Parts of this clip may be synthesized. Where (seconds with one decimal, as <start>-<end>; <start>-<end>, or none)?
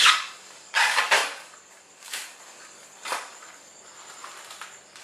0.0-3.7